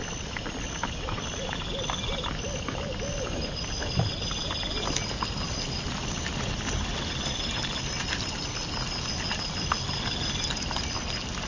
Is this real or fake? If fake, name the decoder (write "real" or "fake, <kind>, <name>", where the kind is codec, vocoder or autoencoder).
real